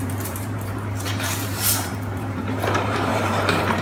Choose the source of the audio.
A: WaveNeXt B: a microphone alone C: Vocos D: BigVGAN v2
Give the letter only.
D